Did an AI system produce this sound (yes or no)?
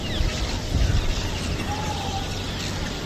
no